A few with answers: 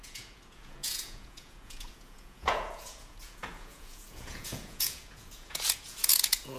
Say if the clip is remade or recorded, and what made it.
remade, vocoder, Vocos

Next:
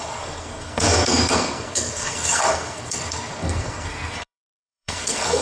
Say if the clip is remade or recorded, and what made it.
remade, codec, SNAC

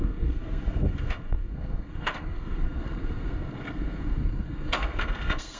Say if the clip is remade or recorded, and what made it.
remade, codec, SNAC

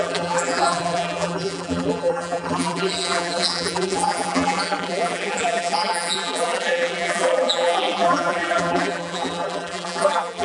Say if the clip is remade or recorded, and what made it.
remade, vocoder, BigVGAN v2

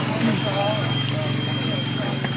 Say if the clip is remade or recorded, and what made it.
remade, codec, DAC